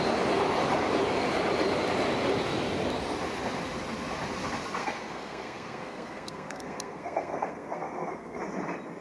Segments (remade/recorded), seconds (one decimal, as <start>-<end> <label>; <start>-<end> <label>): 0.0-4.8 recorded; 4.8-8.4 remade; 8.4-9.0 recorded

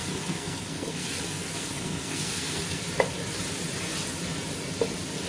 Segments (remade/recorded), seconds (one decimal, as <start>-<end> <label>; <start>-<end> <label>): 0.0-2.8 remade; 2.8-5.3 recorded

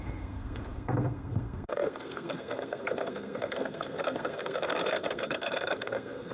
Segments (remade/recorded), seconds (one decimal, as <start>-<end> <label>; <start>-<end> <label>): 0.0-6.3 remade

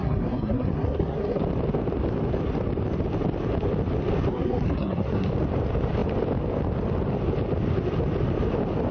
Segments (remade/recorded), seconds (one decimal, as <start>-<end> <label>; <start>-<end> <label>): 0.0-1.4 remade; 1.4-4.3 recorded; 4.3-5.3 remade; 5.3-8.9 recorded

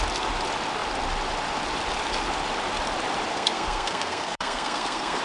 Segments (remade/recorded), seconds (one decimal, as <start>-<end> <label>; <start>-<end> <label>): 0.0-3.3 recorded; 3.3-5.2 remade

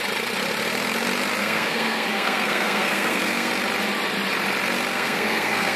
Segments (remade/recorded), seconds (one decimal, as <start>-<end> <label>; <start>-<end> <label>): 0.0-1.4 recorded; 1.4-3.5 remade; 3.5-4.9 recorded; 4.9-5.8 remade

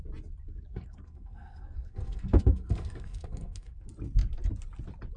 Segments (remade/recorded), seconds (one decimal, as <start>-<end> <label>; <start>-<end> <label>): 0.0-0.7 recorded; 0.7-3.8 remade; 3.8-5.2 recorded